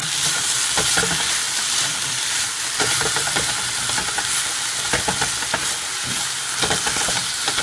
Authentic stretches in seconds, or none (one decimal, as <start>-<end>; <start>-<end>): 0.0-1.0; 3.9-7.6